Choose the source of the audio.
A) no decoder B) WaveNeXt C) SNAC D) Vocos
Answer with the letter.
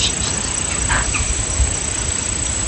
A